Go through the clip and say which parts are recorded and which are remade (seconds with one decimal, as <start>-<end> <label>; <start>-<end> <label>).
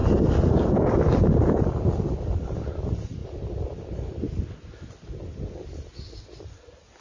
0.0-7.0 recorded